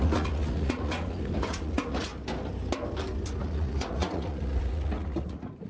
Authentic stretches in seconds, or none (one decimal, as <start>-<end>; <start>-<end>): 2.1-3.4